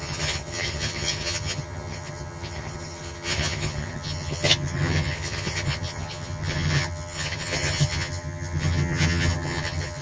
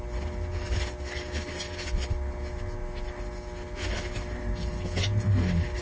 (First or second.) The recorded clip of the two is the second